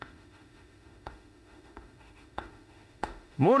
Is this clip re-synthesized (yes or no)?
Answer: yes